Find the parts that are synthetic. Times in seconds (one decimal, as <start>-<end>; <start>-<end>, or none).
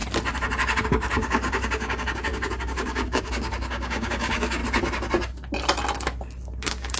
0.8-4.6; 6.6-7.0